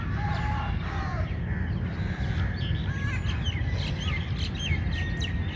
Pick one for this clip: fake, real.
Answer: real